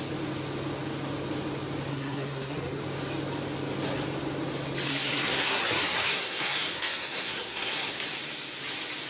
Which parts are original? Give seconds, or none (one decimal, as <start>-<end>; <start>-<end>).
0.0-1.9; 2.8-4.9; 7.9-9.1